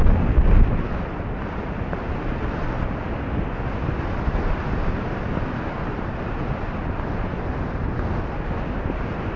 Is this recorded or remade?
recorded